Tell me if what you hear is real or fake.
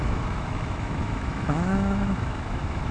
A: fake